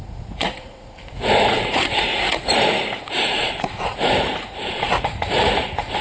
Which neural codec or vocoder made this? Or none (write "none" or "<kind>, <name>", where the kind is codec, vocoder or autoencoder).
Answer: vocoder, Vocos